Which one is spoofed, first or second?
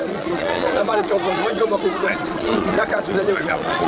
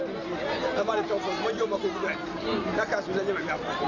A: first